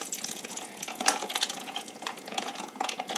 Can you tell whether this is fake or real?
fake